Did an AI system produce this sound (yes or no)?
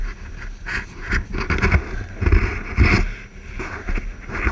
no